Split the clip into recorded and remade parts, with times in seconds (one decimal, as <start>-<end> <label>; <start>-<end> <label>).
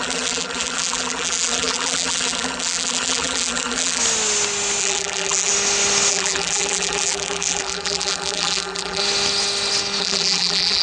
0.0-4.0 remade; 4.0-4.8 recorded; 4.8-5.5 remade; 5.5-6.1 recorded; 6.1-9.0 remade; 9.0-10.0 recorded; 10.0-10.8 remade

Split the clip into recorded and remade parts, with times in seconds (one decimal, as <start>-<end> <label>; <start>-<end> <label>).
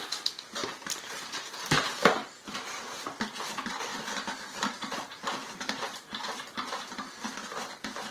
0.0-0.6 recorded; 0.6-3.5 remade; 3.5-3.9 recorded; 3.9-6.7 remade; 6.7-8.1 recorded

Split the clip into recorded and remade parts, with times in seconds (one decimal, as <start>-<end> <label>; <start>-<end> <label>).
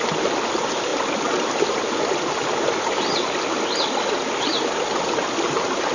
0.0-0.9 remade; 0.9-4.4 recorded; 4.4-5.9 remade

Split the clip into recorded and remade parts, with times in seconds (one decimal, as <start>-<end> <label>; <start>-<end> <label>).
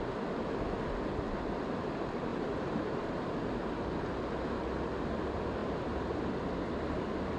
0.0-2.3 recorded; 2.3-3.3 remade; 3.3-5.6 recorded; 5.6-6.3 remade; 6.3-7.4 recorded